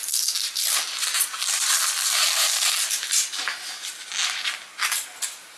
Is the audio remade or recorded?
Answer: recorded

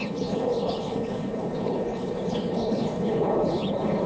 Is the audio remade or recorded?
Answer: remade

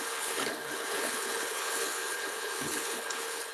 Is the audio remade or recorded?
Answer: remade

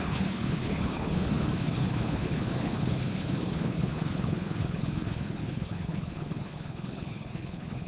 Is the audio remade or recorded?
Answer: remade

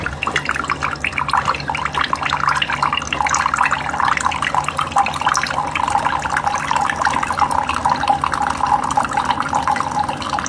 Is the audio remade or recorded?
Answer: recorded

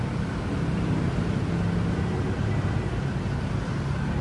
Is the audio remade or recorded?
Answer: recorded